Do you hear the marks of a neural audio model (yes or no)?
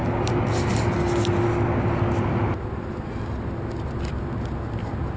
no